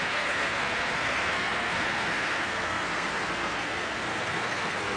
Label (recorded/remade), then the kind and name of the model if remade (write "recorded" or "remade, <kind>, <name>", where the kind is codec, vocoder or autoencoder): remade, codec, SNAC